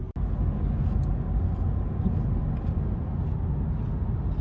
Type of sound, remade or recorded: recorded